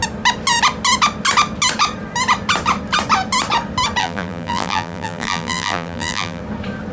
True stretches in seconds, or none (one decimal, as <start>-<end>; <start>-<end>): 0.0-4.0; 6.4-6.9